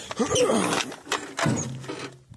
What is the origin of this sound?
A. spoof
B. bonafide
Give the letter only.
B